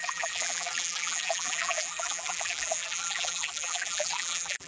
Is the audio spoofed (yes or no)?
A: yes